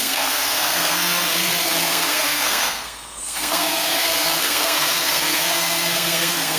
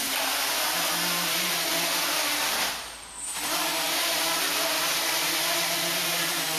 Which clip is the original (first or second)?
second